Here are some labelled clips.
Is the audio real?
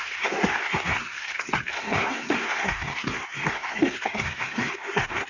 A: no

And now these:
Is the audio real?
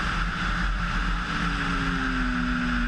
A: yes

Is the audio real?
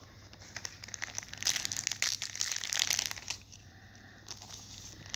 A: yes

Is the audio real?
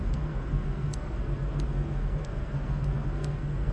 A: no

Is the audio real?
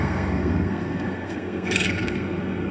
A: no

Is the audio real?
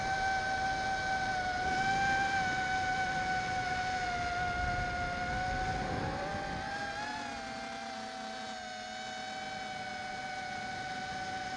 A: yes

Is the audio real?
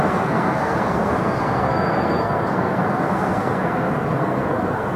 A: no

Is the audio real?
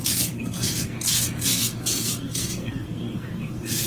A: no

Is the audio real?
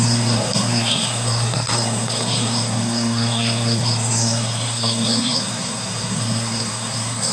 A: no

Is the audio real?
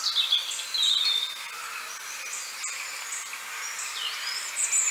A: yes